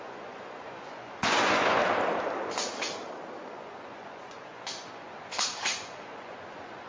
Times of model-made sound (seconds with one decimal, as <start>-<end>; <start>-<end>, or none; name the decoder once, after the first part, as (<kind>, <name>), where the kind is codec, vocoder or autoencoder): 0.0-1.8 (vocoder, Vocos); 3.4-6.9